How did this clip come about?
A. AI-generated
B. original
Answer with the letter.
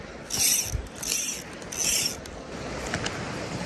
B